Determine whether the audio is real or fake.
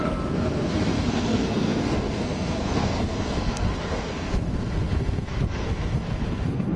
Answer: fake